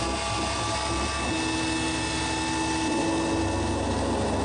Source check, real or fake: real